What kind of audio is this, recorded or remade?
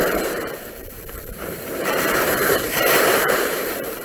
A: remade